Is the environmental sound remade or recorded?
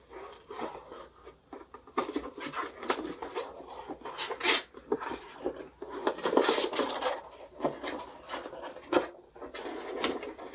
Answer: recorded